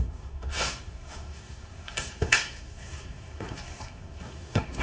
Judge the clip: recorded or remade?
remade